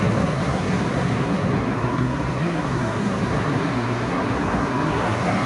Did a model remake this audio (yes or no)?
yes